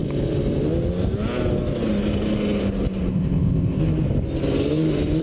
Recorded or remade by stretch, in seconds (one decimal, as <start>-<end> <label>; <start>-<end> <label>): 0.0-3.1 recorded; 3.1-3.8 remade; 3.8-5.2 recorded